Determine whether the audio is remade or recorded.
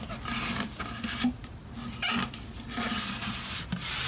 recorded